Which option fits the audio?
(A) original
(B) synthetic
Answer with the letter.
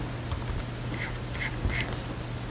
A